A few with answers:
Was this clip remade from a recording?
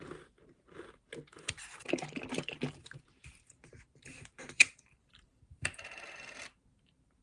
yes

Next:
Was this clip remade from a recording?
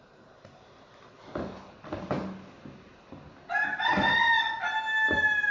no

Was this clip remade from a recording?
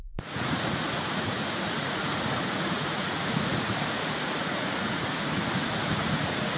yes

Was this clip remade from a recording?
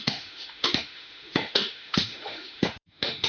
yes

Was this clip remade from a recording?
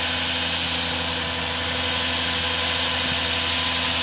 no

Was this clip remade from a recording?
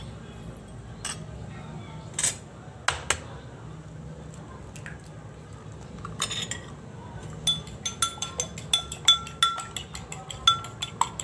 no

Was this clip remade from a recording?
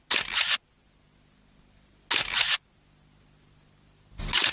no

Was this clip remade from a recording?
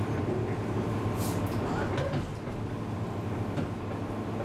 no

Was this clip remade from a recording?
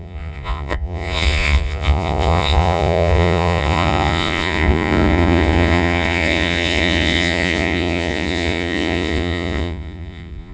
yes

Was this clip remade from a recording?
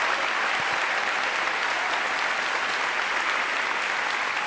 no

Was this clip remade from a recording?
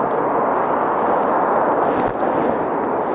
no